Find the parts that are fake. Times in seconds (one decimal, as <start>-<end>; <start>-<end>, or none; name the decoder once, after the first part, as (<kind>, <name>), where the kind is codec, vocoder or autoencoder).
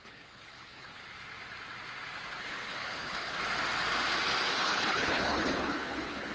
0.0-1.0 (codec, HILCodec); 2.4-3.4; 4.6-6.3